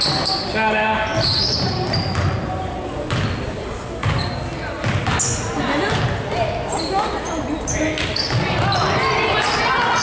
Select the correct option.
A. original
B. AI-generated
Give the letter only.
A